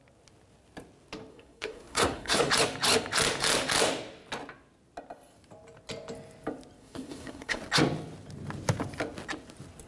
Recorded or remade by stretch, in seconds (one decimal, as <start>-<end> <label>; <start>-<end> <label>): 0.0-1.3 recorded; 1.3-2.5 remade; 2.5-6.8 recorded; 6.8-7.6 remade; 7.6-9.9 recorded